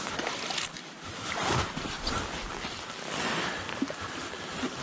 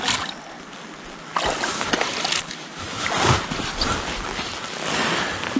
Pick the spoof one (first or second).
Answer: first